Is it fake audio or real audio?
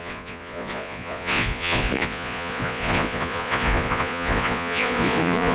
fake